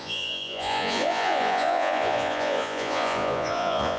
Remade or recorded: remade